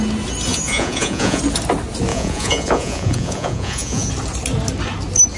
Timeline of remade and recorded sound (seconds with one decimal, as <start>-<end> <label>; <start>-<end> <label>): 0.0-0.5 recorded; 0.5-1.4 remade; 1.4-2.1 recorded; 2.1-4.1 remade; 4.1-5.4 recorded